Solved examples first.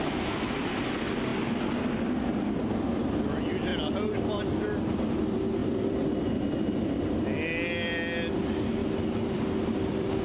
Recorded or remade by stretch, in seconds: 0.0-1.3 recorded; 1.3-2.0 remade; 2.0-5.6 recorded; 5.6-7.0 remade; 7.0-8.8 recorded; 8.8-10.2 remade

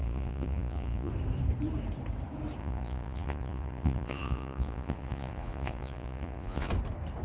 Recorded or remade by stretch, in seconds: 0.0-1.1 remade; 1.1-2.6 recorded; 2.6-6.7 remade; 6.7-7.2 recorded

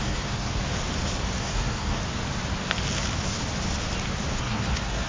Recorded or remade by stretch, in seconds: 0.0-0.6 remade; 0.6-1.4 recorded; 1.4-2.0 remade; 2.0-4.4 recorded; 4.4-5.1 remade

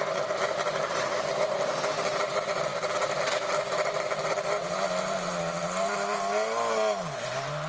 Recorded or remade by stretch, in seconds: 0.0-7.7 recorded

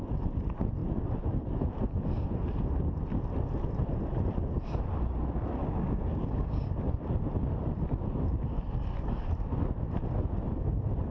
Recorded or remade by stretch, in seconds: 0.0-5.6 recorded; 5.6-6.7 remade; 6.7-11.1 recorded

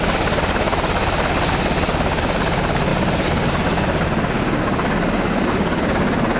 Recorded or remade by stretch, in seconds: 0.0-6.4 recorded

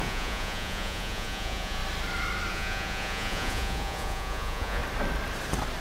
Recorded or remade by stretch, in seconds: 0.0-1.8 remade; 1.8-2.5 recorded; 2.5-4.8 remade; 4.8-5.8 recorded

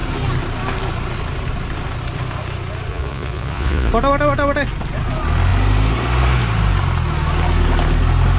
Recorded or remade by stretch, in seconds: 0.0-2.9 recorded; 2.9-3.9 remade; 3.9-8.4 recorded